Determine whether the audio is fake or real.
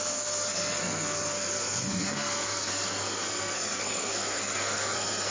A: fake